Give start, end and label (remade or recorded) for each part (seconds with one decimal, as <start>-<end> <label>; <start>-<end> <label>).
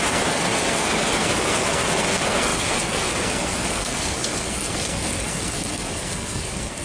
0.0-6.8 remade